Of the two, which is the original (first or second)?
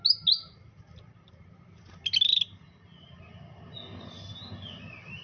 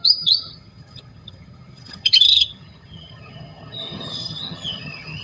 first